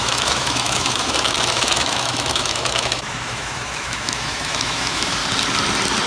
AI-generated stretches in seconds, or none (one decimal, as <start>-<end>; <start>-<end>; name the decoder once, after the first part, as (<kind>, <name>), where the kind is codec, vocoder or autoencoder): 0.0-5.2 (autoencoder, DAC-VAE)